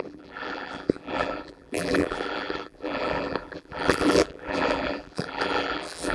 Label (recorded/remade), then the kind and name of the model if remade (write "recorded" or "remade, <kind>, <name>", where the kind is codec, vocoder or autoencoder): remade, vocoder, BigVGAN v2